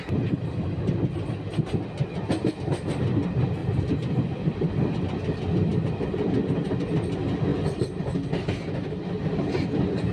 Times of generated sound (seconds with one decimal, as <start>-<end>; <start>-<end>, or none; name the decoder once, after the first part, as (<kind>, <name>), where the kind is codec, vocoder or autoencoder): 3.6-4.7 (vocoder, BigVGAN v2); 5.7-6.4; 7.5-8.3